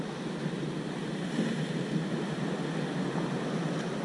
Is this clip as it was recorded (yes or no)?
yes